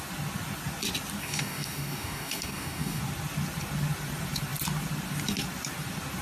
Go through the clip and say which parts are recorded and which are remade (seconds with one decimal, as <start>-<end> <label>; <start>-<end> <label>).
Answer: 0.0-1.2 recorded; 1.2-3.0 remade; 3.0-6.2 recorded